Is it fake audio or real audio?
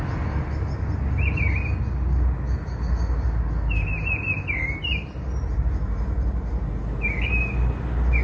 real